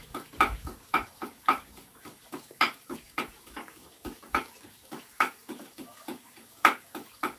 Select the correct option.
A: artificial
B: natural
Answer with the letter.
A